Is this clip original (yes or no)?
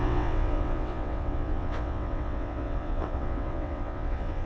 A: no